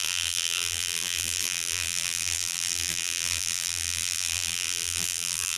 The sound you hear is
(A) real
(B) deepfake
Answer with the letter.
B